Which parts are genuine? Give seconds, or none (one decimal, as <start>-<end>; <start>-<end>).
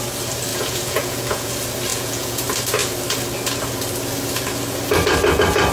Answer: 0.0-0.5; 1.5-1.9; 2.4-5.7